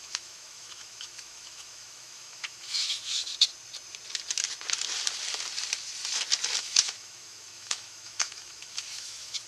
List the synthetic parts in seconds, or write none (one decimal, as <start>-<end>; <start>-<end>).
0.0-3.3; 6.6-9.5